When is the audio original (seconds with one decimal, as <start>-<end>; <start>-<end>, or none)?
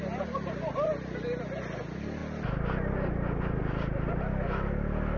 0.0-5.2